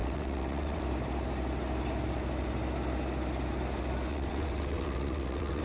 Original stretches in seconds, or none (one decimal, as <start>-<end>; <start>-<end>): 0.8-4.1

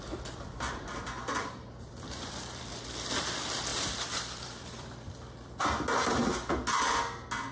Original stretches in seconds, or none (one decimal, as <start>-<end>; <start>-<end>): 0.0-1.3; 2.6-3.7; 5.6-7.5

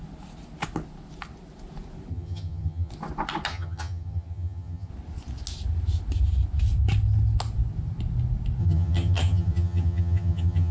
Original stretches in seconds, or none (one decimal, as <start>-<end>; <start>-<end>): 0.0-2.1; 2.9-3.5; 4.9-8.6

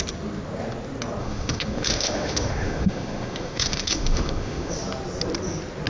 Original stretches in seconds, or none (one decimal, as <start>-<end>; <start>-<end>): 0.0-1.2; 4.7-5.9